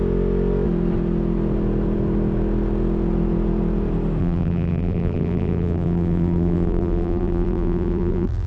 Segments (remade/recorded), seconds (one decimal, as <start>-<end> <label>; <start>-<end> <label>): 0.0-4.2 recorded; 4.2-8.5 remade

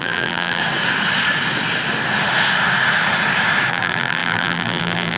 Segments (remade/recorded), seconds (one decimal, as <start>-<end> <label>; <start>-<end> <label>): 0.0-0.6 remade; 0.6-3.7 recorded; 3.7-5.2 remade

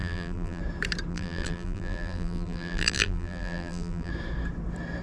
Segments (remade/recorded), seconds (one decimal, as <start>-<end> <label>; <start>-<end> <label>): 0.0-0.6 remade; 0.6-1.1 recorded; 1.1-4.1 remade; 4.1-5.0 recorded

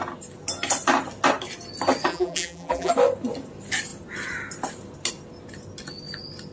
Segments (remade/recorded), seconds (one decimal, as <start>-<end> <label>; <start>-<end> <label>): 0.0-2.1 recorded; 2.1-2.9 remade; 2.9-6.5 recorded